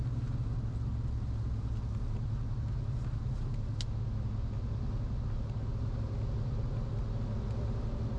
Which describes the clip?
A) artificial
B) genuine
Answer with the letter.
B